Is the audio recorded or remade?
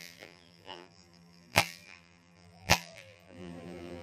remade